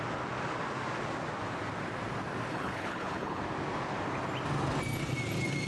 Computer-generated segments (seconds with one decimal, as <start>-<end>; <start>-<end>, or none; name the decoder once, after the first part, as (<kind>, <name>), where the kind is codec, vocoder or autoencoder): 2.5-3.4 (codec, HILCodec)